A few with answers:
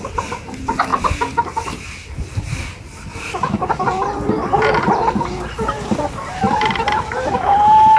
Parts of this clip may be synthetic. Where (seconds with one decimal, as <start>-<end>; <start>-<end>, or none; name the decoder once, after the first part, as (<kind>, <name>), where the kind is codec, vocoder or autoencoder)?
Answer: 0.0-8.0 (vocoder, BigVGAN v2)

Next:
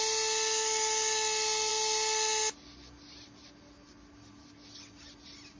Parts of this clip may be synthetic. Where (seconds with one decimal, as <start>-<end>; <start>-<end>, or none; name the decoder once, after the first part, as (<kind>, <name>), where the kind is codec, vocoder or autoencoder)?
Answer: none

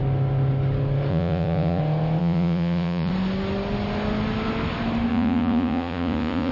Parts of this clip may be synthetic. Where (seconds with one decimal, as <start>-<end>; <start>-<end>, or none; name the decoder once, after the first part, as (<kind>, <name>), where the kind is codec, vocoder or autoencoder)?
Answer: 1.1-1.8 (vocoder, Vocos); 2.2-3.1; 5.1-6.5

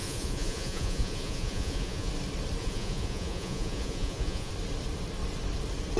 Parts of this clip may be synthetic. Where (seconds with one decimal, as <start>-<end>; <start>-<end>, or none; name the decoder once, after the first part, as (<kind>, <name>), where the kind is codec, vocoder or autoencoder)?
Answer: 0.0-2.1 (vocoder, Vocos); 2.6-4.5